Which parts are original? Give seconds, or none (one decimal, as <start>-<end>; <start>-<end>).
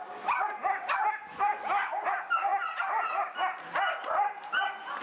0.0-5.0